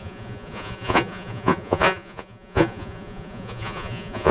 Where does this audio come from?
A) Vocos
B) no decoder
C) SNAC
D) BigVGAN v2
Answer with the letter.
A